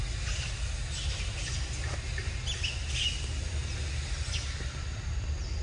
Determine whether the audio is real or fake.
real